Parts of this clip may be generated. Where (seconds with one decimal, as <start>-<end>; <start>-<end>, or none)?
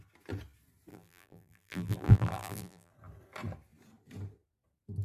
0.9-2.9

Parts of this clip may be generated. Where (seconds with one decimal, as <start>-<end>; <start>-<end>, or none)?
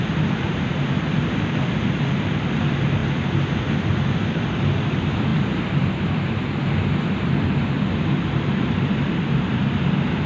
0.0-3.0; 3.6-10.3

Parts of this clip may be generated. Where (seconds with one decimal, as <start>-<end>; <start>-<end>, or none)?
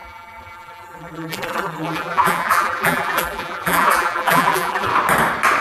0.0-4.9